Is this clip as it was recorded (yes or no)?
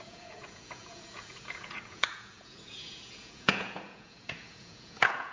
no